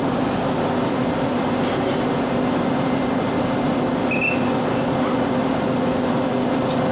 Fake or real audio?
real